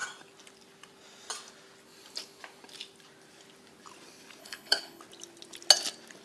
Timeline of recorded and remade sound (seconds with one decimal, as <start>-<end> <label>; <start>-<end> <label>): 0.0-4.4 recorded; 4.4-5.0 remade; 5.0-6.2 recorded